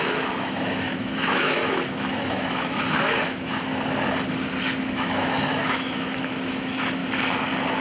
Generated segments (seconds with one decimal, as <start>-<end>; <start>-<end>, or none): 0.0-3.7; 4.8-7.0